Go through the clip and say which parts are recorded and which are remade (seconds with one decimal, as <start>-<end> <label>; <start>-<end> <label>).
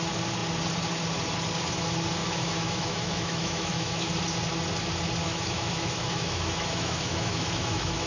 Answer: 0.0-2.2 recorded; 2.2-4.1 remade; 4.1-5.2 recorded; 5.2-8.1 remade